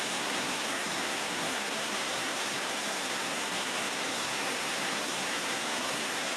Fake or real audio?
fake